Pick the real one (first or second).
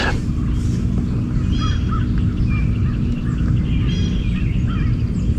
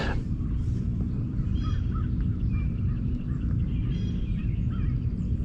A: first